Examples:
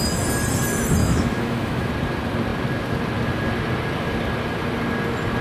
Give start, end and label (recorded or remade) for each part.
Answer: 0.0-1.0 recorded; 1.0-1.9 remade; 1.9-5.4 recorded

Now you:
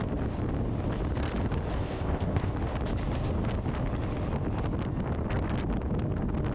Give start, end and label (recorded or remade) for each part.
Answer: 0.0-1.8 recorded; 1.8-2.5 remade; 2.5-6.5 recorded